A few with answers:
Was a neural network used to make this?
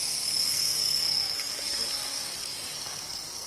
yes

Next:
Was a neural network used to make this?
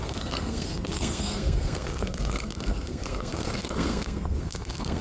yes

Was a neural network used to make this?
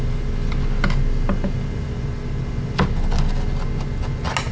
no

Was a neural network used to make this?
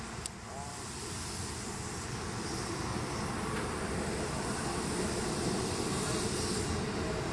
no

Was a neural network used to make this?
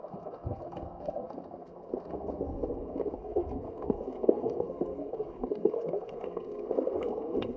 yes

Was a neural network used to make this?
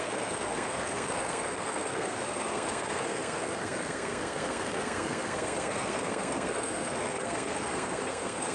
yes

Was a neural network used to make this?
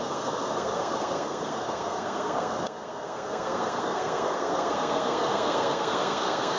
yes